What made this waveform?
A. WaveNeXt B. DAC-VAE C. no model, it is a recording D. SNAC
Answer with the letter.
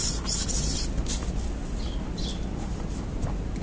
C